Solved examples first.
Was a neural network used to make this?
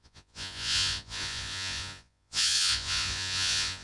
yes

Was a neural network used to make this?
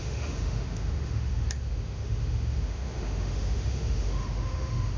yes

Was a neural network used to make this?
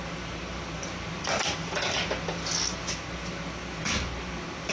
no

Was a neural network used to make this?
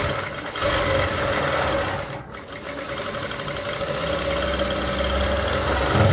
no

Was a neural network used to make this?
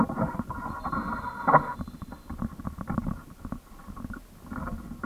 no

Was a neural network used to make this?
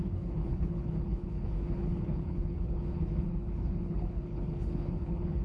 yes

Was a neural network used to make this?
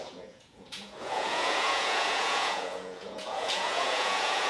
yes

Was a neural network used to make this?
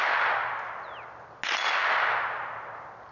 no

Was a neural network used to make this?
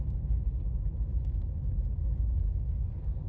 no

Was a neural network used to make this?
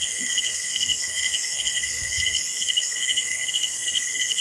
yes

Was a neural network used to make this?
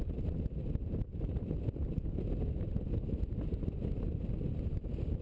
no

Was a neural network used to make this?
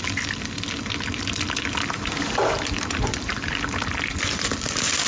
no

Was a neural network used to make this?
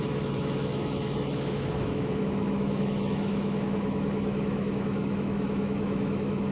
yes